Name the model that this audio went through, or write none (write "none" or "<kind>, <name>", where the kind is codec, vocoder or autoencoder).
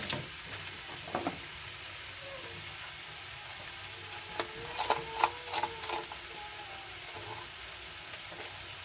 none